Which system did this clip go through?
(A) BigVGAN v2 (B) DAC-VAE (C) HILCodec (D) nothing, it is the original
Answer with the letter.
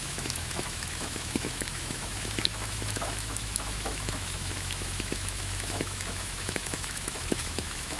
B